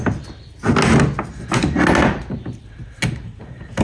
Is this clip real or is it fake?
real